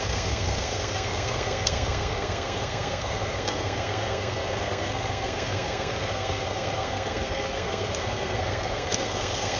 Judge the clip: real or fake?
fake